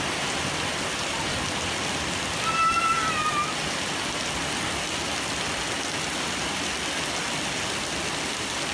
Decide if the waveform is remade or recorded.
recorded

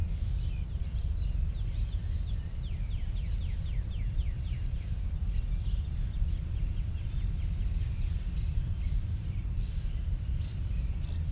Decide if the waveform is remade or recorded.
recorded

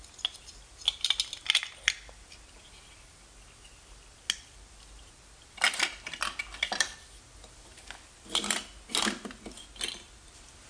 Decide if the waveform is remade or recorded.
recorded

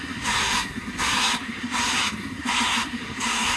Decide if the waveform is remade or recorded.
remade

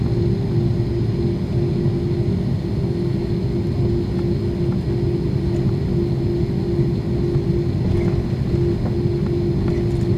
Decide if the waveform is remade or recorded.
recorded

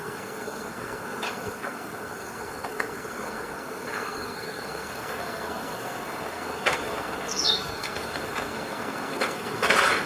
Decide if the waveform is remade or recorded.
remade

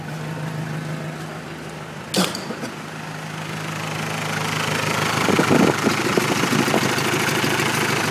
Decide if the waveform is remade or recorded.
recorded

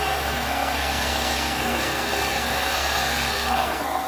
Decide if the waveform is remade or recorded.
remade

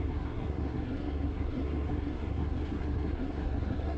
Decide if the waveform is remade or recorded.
remade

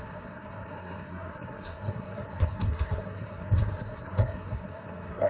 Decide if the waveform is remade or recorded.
remade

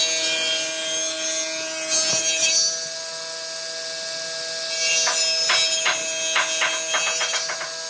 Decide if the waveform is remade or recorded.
recorded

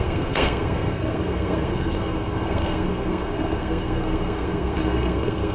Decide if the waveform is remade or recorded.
remade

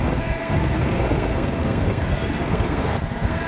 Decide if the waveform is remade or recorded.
remade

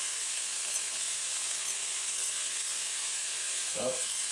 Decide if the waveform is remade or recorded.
remade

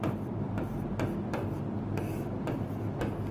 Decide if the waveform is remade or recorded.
recorded